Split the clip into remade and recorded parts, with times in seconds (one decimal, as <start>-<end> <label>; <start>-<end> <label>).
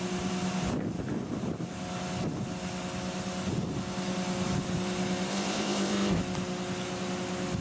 0.0-5.3 recorded; 5.3-6.2 remade; 6.2-7.6 recorded